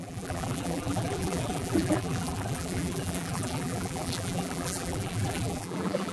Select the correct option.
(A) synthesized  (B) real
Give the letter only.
A